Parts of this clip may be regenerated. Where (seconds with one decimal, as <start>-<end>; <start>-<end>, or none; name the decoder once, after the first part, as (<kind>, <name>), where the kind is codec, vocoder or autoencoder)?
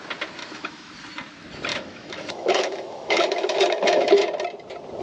0.4-0.9 (autoencoder, DAC-VAE); 1.7-4.1